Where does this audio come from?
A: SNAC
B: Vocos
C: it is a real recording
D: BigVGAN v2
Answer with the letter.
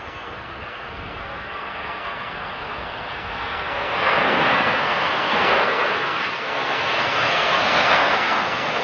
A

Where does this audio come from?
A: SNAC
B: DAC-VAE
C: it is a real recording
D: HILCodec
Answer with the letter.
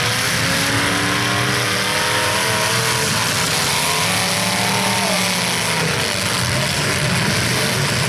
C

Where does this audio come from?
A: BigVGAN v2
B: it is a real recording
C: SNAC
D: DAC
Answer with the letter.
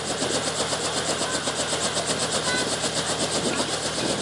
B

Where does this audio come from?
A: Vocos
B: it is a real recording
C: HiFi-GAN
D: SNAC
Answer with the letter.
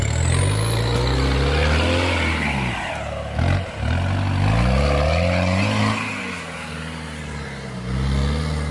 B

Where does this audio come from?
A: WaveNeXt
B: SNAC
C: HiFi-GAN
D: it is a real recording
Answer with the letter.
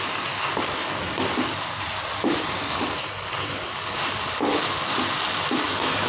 D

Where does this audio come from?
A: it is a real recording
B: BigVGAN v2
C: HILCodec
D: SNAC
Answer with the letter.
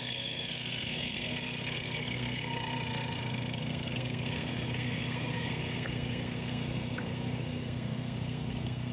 D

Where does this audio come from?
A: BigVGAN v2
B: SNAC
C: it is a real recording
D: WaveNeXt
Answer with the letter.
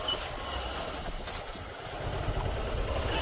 C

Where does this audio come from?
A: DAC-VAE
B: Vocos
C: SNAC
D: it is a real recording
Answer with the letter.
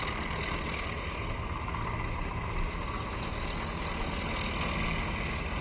D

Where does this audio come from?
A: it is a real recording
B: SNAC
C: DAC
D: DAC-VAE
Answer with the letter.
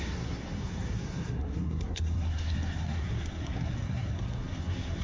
B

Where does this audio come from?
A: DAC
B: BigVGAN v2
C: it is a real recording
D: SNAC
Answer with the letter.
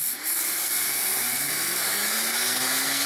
D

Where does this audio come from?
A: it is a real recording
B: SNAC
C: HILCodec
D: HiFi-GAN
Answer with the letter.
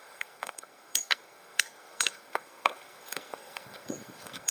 B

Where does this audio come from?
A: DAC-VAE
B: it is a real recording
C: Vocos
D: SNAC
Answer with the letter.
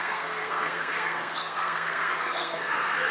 D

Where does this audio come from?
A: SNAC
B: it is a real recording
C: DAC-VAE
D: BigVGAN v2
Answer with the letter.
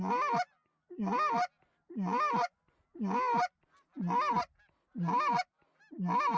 B